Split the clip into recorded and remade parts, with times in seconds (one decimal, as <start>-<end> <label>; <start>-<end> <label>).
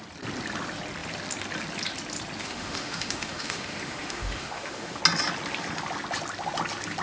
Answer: 0.0-2.4 recorded; 2.4-5.0 remade; 5.0-7.0 recorded